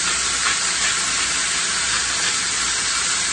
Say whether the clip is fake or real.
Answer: real